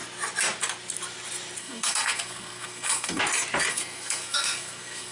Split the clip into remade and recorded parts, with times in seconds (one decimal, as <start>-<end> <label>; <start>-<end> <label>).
0.0-1.6 recorded; 1.6-3.2 remade; 3.2-3.7 recorded; 3.7-5.1 remade